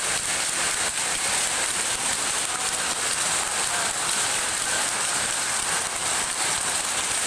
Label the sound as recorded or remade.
recorded